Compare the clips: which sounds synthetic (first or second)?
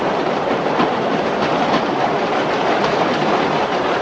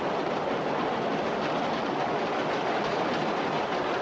first